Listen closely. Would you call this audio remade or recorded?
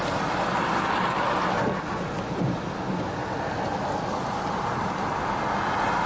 recorded